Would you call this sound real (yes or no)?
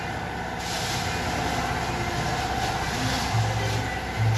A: yes